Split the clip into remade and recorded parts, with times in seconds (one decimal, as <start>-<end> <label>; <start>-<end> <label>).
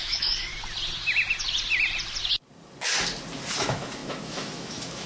0.0-0.5 remade; 0.5-3.6 recorded; 3.6-5.1 remade